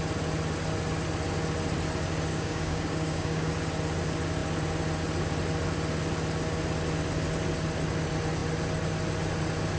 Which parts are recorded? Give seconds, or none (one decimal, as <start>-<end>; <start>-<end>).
0.0-2.3; 3.5-9.8